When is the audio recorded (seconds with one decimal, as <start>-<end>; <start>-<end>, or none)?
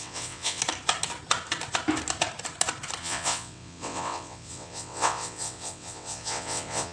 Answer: 0.6-3.0